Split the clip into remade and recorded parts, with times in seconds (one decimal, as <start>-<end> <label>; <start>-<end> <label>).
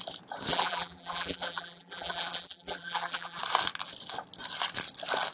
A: 0.0-0.5 recorded; 0.5-3.4 remade; 3.4-5.3 recorded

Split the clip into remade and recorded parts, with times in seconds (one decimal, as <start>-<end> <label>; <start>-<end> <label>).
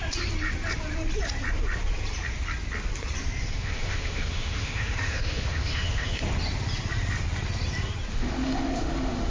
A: 0.0-3.4 recorded; 3.4-6.2 remade; 6.2-8.1 recorded; 8.1-9.3 remade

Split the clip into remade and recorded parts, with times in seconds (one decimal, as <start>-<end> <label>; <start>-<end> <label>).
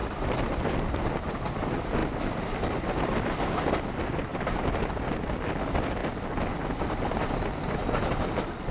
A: 0.0-2.0 recorded; 2.0-3.1 remade; 3.1-4.3 recorded; 4.3-5.1 remade; 5.1-8.7 recorded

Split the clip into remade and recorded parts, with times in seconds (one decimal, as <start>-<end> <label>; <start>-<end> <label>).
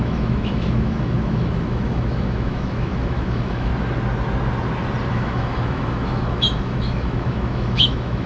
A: 0.0-3.7 remade; 3.7-5.1 recorded; 5.1-8.3 remade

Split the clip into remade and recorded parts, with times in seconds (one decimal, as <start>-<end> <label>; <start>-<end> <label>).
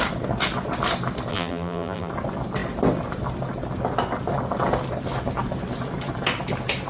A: 0.0-1.3 recorded; 1.3-2.1 remade; 2.1-6.9 recorded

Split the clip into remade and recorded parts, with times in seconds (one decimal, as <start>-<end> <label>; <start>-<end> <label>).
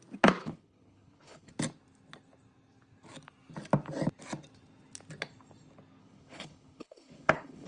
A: 0.0-0.4 recorded; 0.4-1.5 remade; 1.5-6.0 recorded; 6.0-7.7 remade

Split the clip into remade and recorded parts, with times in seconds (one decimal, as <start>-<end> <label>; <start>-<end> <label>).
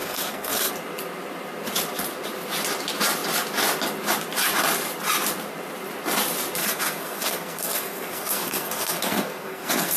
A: 0.0-0.7 remade; 0.7-6.6 recorded; 6.6-10.0 remade